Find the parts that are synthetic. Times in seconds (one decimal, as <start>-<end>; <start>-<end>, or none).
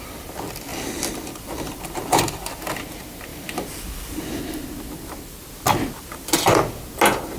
0.7-2.5; 3.3-4.4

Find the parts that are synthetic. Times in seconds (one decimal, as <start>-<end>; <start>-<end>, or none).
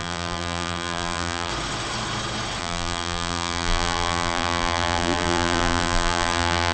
0.0-1.5; 2.6-6.7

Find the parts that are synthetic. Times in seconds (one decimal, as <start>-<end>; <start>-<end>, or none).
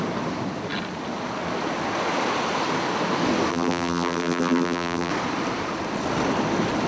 3.5-5.1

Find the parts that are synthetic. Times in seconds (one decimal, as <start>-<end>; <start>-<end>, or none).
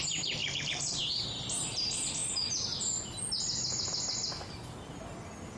0.0-2.2